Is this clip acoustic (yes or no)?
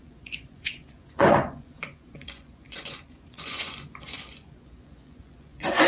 no